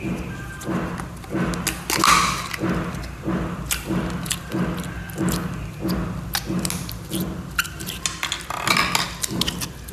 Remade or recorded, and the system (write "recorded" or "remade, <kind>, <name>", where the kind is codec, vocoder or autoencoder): recorded